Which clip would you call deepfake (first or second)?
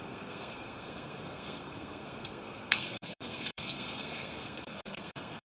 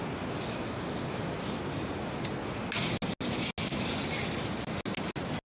first